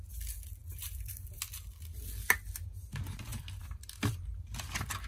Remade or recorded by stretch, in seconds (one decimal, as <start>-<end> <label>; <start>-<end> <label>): 0.0-0.6 recorded; 0.6-1.4 remade; 1.4-3.3 recorded; 3.3-3.8 remade; 3.8-5.1 recorded